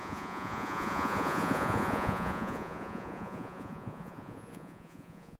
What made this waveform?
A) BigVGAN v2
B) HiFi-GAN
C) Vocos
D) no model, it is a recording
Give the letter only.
C